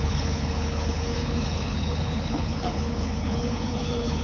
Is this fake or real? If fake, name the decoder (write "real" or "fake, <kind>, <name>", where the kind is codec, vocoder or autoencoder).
fake, codec, HILCodec